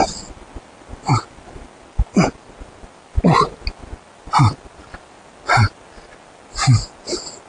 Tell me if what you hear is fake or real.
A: real